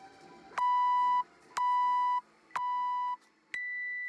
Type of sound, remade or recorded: recorded